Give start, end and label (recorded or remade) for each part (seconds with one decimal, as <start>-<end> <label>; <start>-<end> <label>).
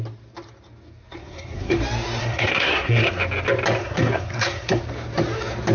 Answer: 0.0-1.2 recorded; 1.2-1.8 remade; 1.8-2.2 recorded; 2.2-3.2 remade; 3.2-3.8 recorded; 3.8-4.8 remade; 4.8-5.7 recorded